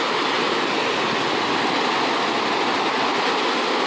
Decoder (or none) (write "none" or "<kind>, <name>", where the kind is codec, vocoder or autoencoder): none